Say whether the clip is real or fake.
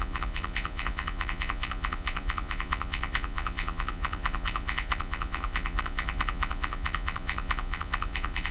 fake